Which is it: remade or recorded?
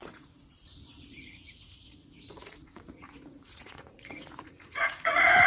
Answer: remade